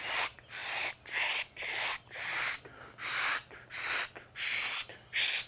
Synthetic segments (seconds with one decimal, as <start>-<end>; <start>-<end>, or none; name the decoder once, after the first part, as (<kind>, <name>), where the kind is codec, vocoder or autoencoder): none